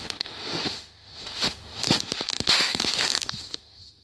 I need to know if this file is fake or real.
fake